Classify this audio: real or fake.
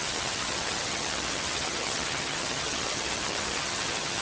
fake